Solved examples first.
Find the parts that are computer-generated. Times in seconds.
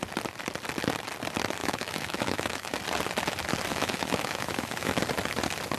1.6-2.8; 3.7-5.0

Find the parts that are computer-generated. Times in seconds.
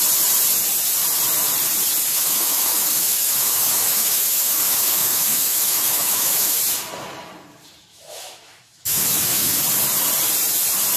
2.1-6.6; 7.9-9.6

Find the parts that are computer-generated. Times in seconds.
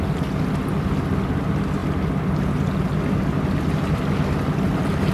none